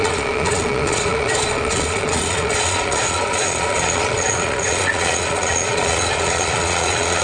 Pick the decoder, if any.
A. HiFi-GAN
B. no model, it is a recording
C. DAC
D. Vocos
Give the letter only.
D